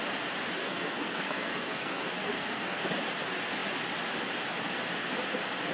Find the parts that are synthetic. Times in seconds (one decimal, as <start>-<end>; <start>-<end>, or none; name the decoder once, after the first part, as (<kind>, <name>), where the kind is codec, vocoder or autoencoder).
0.6-2.9 (codec, SNAC)